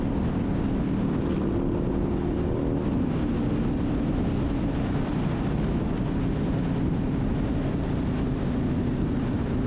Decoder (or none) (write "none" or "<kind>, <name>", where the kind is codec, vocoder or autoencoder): none